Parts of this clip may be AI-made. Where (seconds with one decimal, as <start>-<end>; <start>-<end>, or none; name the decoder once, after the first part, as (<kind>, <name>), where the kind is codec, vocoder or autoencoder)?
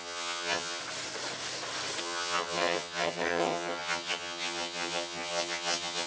0.0-0.8 (vocoder, HiFi-GAN); 2.0-6.1